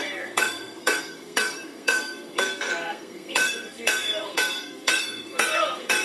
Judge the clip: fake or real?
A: fake